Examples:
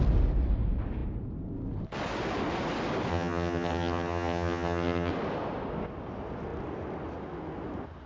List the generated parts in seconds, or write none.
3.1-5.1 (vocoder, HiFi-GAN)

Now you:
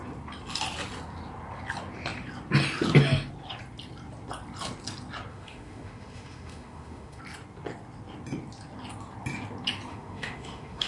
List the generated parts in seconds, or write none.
5.3-7.2 (autoencoder, DAC-VAE); 9.9-10.9

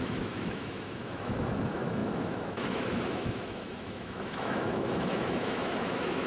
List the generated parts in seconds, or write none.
0.0-6.3 (autoencoder, DAC-VAE)

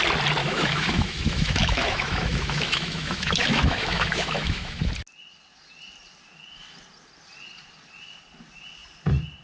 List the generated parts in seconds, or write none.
0.4-4.9 (autoencoder, DAC-VAE)

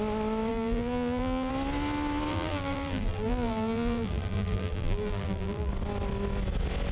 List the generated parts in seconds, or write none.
0.5-1.5 (vocoder, BigVGAN v2); 2.3-5.7

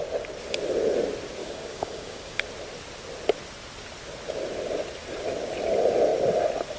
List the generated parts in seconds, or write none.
1.4-2.4 (codec, DAC)

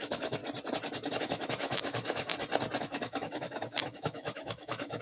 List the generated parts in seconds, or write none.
0.0-0.4 (autoencoder, DAC-VAE); 1.2-2.3; 2.8-5.0